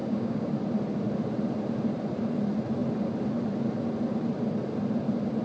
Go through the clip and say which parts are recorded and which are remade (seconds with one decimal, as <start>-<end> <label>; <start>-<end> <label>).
0.0-0.5 remade; 0.5-5.4 recorded